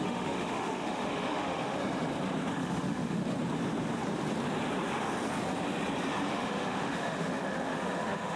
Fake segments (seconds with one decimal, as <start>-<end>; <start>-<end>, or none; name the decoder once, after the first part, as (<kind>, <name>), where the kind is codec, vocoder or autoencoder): 0.0-1.8 (autoencoder, DAC-VAE); 2.5-3.2; 6.3-8.4